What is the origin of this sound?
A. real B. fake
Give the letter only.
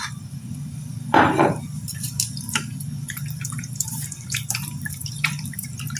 B